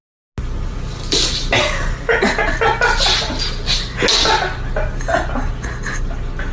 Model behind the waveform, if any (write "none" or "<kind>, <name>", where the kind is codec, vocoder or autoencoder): none